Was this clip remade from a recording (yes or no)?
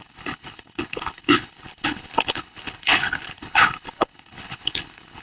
yes